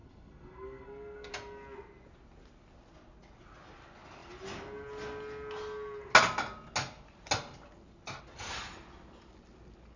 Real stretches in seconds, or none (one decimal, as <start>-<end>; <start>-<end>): 1.3-10.0